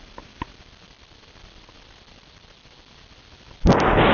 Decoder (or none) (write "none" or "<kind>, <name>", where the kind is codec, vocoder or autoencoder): none